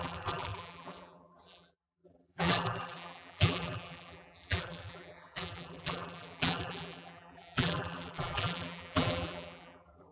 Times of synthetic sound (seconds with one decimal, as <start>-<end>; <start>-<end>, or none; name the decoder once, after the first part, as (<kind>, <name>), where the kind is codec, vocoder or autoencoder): 0.0-10.1 (vocoder, BigVGAN v2)